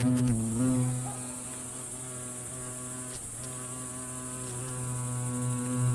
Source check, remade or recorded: recorded